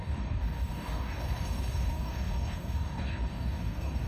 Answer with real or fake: fake